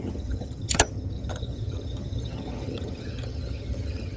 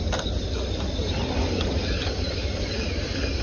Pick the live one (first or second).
second